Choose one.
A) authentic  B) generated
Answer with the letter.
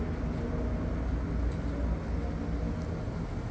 A